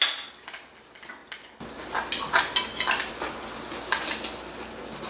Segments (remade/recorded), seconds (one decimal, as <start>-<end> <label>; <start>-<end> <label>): 0.0-5.1 recorded